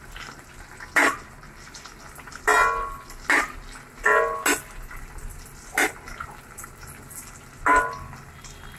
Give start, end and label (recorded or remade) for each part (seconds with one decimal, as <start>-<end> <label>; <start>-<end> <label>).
0.0-8.8 recorded